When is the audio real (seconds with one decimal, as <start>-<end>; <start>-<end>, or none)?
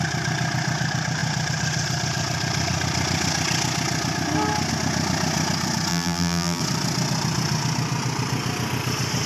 0.0-5.9; 6.6-9.3